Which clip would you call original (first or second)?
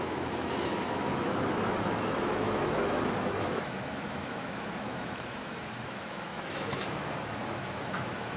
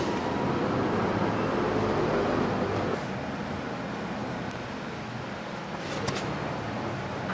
second